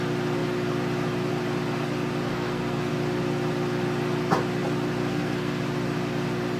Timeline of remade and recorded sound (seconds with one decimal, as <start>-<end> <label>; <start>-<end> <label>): 0.0-2.3 recorded; 2.3-2.9 remade; 2.9-5.0 recorded; 5.0-5.6 remade; 5.6-6.6 recorded